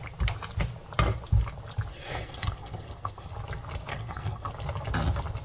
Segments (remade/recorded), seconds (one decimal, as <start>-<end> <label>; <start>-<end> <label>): 0.0-1.9 recorded; 1.9-3.3 remade; 3.3-3.9 recorded; 3.9-4.5 remade; 4.5-5.4 recorded